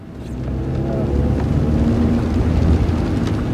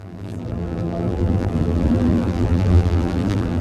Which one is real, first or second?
first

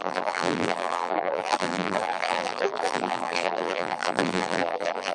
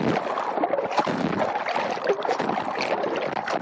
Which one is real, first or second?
second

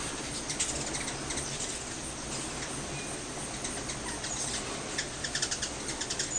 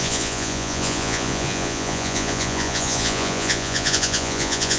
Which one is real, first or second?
first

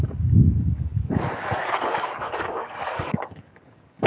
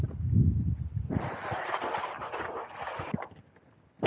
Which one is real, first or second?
second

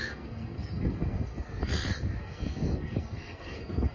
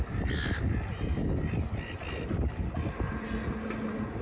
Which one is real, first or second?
second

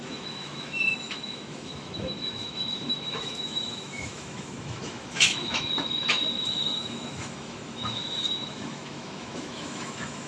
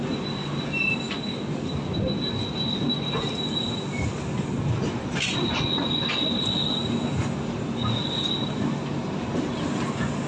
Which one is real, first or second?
second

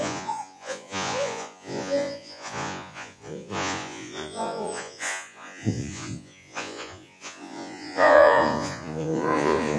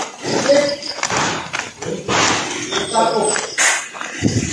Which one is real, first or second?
second